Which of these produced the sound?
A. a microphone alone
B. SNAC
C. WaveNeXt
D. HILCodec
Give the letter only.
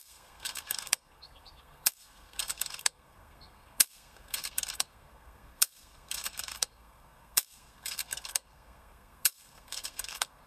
B